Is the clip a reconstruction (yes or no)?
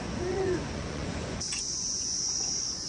yes